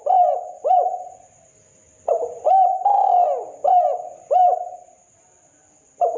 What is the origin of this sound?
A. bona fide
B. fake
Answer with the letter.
A